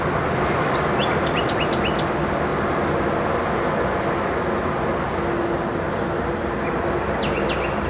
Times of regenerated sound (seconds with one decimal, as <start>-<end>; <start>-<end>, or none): none